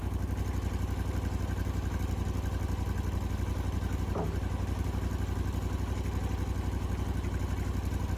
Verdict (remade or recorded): recorded